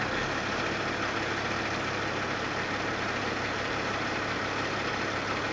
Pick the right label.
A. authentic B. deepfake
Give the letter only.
A